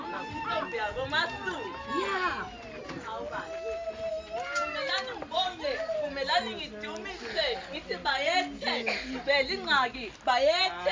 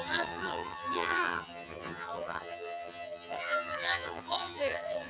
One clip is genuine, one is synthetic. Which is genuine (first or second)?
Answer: first